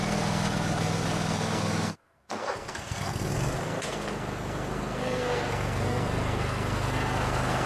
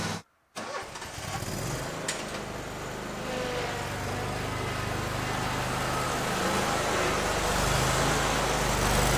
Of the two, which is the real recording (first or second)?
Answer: second